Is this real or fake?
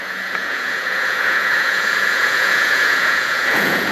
fake